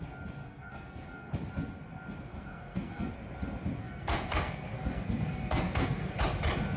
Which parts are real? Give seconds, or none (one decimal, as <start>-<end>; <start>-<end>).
0.0-0.4; 1.3-2.3; 3.1-3.8; 6.1-6.8